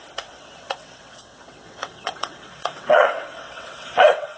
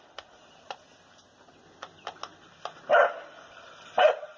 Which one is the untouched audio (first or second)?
second